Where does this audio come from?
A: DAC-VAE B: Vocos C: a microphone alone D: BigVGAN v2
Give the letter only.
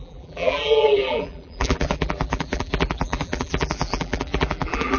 D